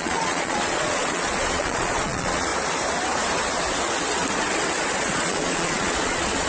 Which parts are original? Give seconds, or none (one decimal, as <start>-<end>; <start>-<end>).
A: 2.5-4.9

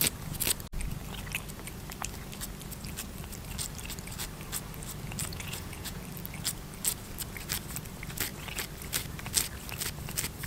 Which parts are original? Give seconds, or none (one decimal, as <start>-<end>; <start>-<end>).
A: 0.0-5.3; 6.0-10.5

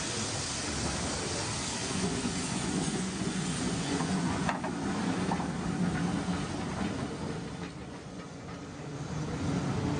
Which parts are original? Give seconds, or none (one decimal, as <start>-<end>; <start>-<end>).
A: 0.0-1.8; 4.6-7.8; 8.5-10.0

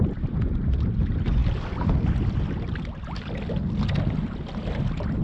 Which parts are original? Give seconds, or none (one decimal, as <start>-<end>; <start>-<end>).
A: 0.0-5.2

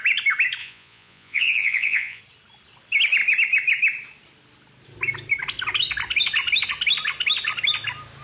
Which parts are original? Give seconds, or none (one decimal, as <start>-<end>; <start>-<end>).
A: 0.0-0.6; 2.2-8.2